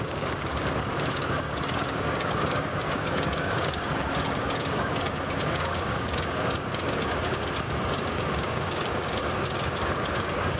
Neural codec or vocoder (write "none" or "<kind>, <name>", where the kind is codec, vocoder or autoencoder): codec, DAC